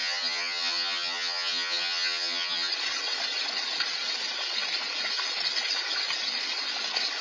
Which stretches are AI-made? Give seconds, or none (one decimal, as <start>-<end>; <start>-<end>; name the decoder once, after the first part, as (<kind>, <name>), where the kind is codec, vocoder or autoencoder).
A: 0.0-2.7 (vocoder, HiFi-GAN)